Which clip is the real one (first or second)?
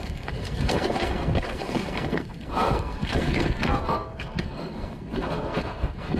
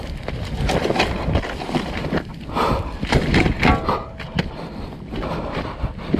second